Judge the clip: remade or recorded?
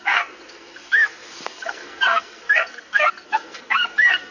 remade